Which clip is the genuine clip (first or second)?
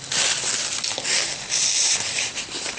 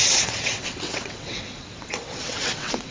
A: first